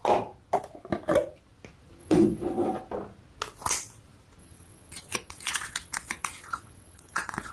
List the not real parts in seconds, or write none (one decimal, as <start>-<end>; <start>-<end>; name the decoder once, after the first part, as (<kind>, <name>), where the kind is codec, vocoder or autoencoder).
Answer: 2.0-2.8 (vocoder, WaveNeXt); 4.4-7.5